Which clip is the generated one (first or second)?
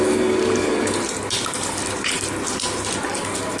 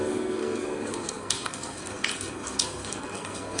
second